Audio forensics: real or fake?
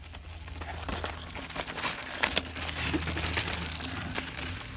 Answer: real